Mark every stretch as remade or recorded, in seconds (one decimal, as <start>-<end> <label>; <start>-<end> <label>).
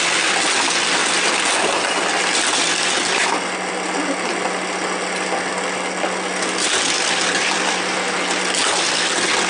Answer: 0.0-9.5 recorded